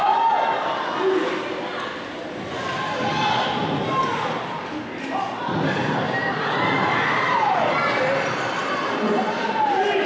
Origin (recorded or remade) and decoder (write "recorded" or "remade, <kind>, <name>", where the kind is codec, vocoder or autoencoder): recorded